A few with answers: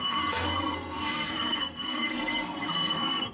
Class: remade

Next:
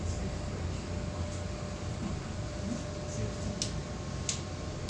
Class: recorded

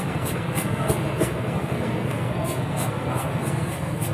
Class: remade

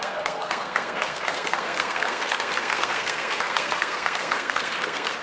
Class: remade